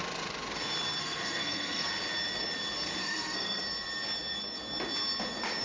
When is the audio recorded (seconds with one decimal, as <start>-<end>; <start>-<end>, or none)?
0.0-1.0; 1.9-3.0; 3.6-5.6